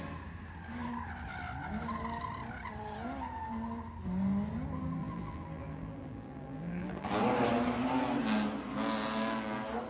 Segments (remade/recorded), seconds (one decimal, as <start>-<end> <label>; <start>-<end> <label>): 0.0-5.0 recorded; 5.0-7.1 remade; 7.1-9.9 recorded